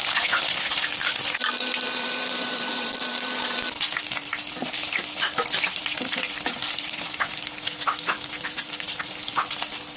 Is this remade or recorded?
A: remade